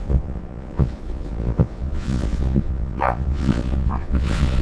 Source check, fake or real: fake